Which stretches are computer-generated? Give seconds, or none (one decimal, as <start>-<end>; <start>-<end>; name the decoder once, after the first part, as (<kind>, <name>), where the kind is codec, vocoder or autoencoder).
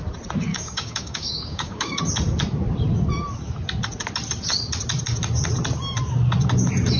0.5-2.0 (codec, DAC)